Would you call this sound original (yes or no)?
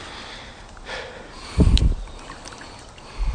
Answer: yes